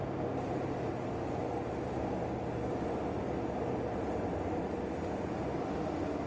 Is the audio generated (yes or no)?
no